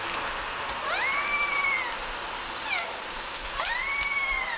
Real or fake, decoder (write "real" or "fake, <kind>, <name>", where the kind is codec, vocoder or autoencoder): real